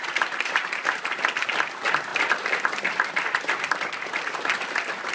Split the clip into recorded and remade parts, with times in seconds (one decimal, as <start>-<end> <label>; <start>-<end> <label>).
0.0-5.1 recorded